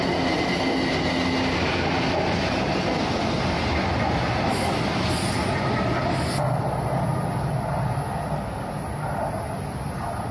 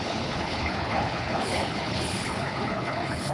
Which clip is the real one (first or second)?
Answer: first